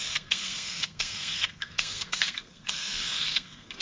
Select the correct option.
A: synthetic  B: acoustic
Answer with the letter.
A